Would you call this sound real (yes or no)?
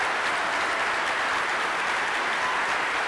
yes